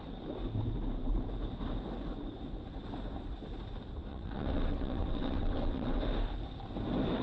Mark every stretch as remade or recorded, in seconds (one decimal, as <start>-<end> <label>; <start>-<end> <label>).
0.0-4.1 recorded; 4.1-6.0 remade; 6.0-7.2 recorded